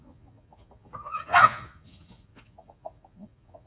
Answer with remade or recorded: remade